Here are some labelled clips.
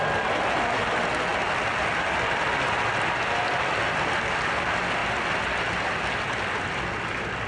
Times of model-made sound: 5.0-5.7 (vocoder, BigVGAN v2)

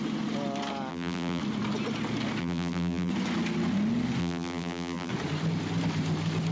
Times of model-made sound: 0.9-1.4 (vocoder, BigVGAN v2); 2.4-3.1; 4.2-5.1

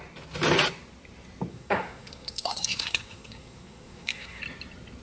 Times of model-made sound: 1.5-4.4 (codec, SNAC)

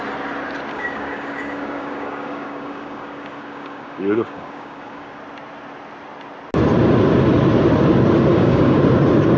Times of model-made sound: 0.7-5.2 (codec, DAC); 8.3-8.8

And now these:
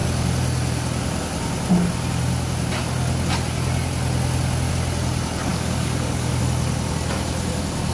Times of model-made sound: 5.5-6.4 (codec, DAC)

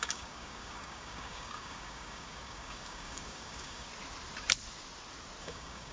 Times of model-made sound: 0.0-3.9 (codec, DAC); 5.4-5.9